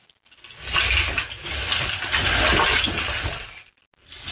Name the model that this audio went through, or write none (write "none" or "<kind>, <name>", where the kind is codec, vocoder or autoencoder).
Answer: none